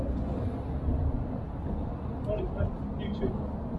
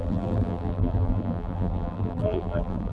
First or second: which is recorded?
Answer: first